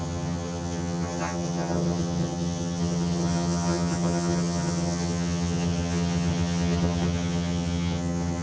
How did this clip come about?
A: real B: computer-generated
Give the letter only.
B